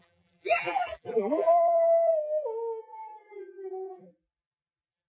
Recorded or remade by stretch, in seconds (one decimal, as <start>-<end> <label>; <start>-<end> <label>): 0.0-2.1 remade; 2.1-2.8 recorded; 2.8-5.1 remade

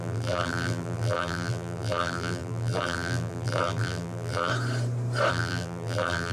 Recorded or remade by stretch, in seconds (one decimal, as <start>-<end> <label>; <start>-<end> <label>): 0.0-4.5 remade; 4.5-5.3 recorded; 5.3-6.3 remade

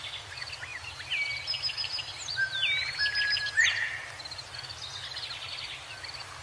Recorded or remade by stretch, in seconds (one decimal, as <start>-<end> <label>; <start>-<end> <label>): 0.0-0.7 recorded; 0.7-3.9 remade; 3.9-6.4 recorded

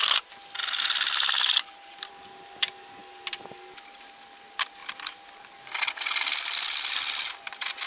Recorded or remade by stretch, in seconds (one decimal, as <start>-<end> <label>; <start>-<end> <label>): 0.0-0.6 recorded; 0.6-2.1 remade; 2.1-4.8 recorded; 4.8-5.8 remade; 5.8-7.9 recorded

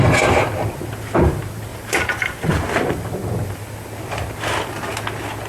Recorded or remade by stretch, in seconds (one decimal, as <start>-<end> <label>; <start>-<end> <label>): 0.0-1.7 recorded; 1.7-2.5 remade; 2.5-5.5 recorded

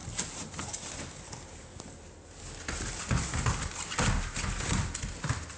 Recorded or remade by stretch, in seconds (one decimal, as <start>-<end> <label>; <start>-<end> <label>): 0.0-5.6 recorded

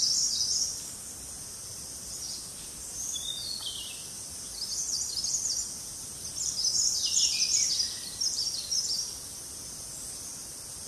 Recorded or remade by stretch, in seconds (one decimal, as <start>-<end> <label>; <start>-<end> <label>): 0.0-2.5 remade; 2.5-3.6 recorded; 3.6-10.9 remade